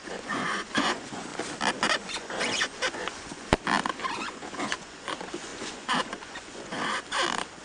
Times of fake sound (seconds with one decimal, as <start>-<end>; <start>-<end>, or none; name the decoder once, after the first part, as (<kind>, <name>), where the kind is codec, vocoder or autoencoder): 0.0-1.3 (vocoder, Vocos); 2.0-3.5; 4.0-6.7